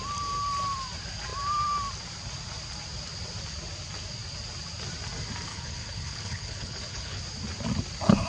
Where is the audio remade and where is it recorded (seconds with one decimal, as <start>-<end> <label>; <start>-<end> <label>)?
0.0-5.5 recorded; 5.5-7.2 remade; 7.2-8.3 recorded